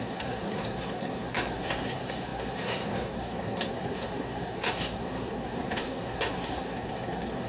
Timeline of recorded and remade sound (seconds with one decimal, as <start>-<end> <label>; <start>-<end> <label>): 0.0-7.5 remade